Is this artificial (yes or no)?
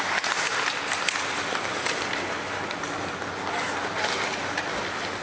no